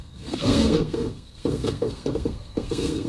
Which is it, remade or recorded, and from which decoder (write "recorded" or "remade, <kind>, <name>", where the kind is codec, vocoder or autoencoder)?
remade, codec, SNAC